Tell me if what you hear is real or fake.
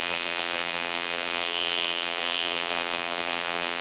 fake